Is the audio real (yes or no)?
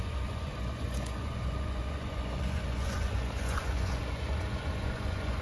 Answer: no